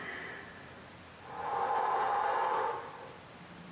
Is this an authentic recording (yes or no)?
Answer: yes